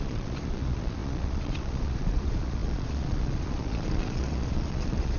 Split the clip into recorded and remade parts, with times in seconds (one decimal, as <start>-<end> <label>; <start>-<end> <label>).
0.0-5.2 remade

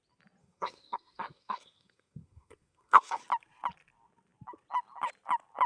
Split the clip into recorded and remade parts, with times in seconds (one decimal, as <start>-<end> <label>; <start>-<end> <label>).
0.0-0.4 recorded; 0.4-3.2 remade; 3.2-5.7 recorded

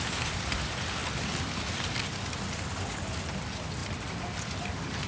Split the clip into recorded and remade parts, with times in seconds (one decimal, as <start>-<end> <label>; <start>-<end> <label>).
0.0-5.1 recorded